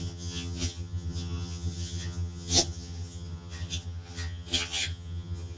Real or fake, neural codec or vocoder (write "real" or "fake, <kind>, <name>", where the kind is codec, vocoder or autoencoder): fake, vocoder, HiFi-GAN